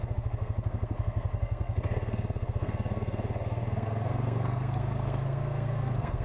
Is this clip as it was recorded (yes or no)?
no